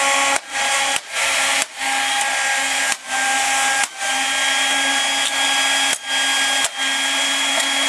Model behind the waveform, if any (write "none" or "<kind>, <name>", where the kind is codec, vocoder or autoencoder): none